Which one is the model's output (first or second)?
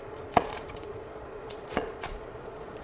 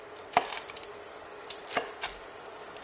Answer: first